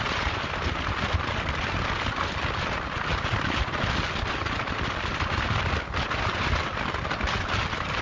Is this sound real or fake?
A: real